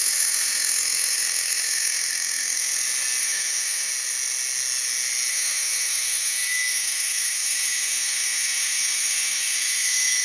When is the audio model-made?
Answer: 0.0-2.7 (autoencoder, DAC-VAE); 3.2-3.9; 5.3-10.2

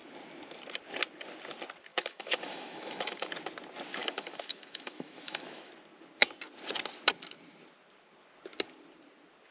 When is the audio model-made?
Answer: 1.9-3.3 (autoencoder, DAC-VAE); 4.0-5.7

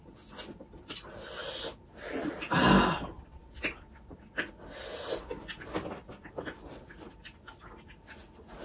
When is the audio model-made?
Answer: none

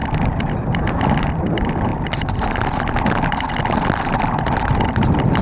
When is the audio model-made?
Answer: none

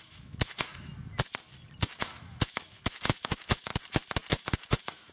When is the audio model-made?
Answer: 0.0-0.9 (autoencoder, DAC-VAE); 1.8-3.7; 4.3-5.1